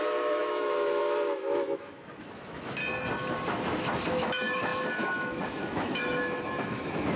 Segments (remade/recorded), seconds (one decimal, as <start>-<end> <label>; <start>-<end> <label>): 0.0-2.8 remade; 2.8-4.1 recorded; 4.1-7.2 remade